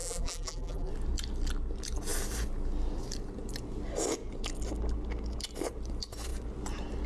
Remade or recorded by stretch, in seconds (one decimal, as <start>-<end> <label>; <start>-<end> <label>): 0.0-0.9 remade; 0.9-7.1 recorded